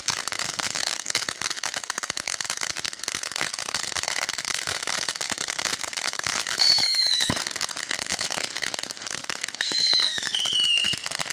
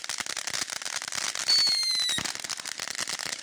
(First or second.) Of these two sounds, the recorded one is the second